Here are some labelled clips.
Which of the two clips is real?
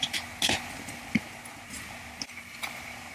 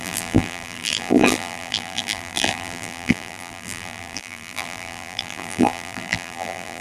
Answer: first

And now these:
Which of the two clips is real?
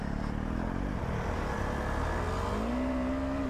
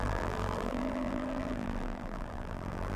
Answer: first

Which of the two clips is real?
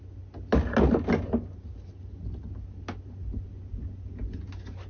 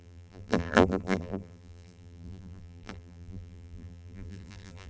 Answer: first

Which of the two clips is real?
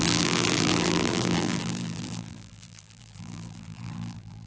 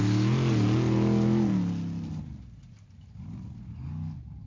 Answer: second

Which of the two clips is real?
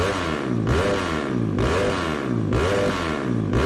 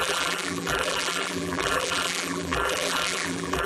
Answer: first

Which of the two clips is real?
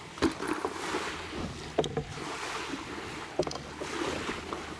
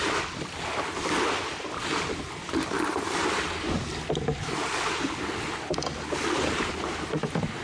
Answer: first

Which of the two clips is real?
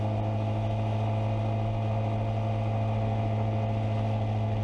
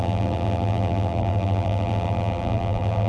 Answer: first